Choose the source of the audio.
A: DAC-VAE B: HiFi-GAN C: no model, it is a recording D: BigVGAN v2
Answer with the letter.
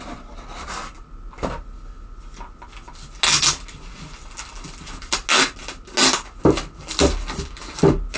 C